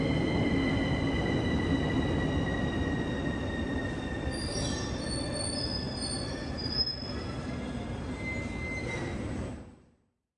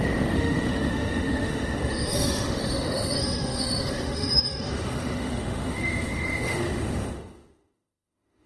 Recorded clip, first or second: first